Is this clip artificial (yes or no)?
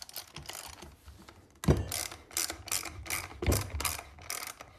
no